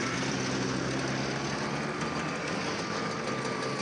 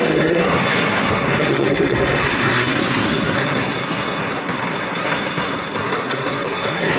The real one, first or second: first